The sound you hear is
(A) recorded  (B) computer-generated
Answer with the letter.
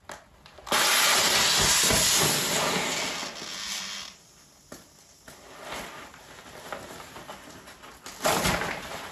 A